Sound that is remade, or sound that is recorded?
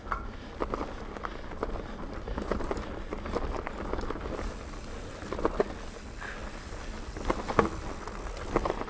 recorded